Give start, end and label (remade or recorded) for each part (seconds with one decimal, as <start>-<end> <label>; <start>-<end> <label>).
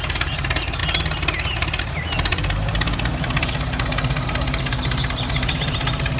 0.0-2.3 recorded; 2.3-6.2 remade